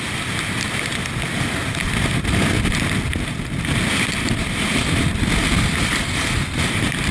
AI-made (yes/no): yes